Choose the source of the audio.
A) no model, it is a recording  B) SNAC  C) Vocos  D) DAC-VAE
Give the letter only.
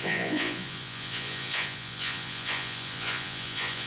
C